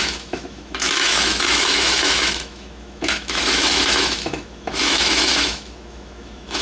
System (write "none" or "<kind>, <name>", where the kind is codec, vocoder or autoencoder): autoencoder, DAC-VAE